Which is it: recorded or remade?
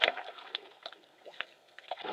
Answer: remade